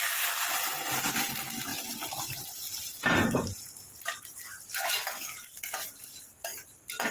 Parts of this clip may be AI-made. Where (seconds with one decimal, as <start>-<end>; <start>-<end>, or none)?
1.7-3.9; 4.5-7.1